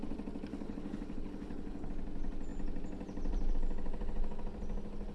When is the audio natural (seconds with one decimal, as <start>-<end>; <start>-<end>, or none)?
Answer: 0.0-0.5; 1.9-5.1